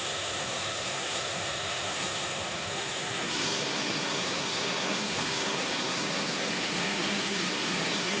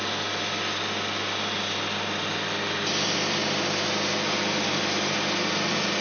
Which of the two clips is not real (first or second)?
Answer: first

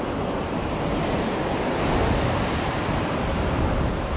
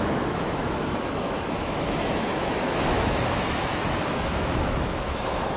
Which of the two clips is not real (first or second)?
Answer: second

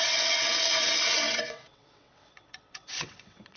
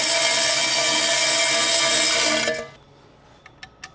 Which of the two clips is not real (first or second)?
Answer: first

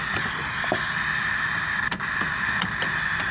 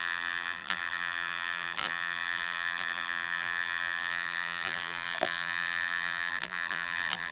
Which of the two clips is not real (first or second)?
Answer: second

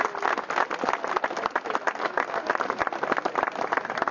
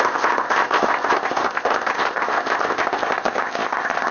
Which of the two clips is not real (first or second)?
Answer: second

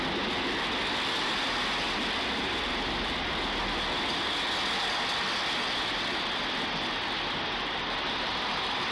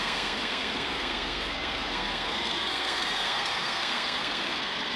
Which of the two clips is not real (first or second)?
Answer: second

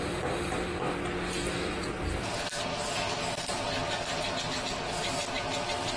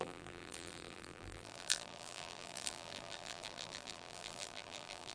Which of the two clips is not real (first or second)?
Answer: second